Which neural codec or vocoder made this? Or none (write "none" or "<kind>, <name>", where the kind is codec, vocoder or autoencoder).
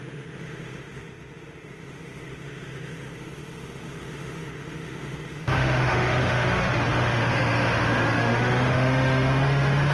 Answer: autoencoder, DAC-VAE